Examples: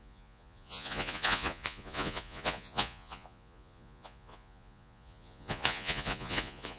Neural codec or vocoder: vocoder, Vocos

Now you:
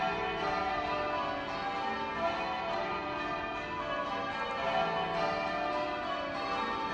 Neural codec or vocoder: none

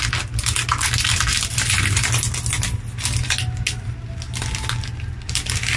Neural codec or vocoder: none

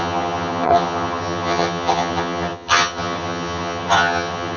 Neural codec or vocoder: vocoder, HiFi-GAN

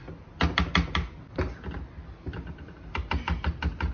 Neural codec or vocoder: none